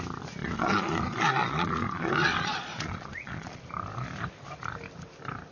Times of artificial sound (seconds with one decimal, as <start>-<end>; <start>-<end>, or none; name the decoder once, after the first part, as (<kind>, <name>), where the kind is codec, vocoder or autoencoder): 0.4-3.6 (vocoder, Vocos)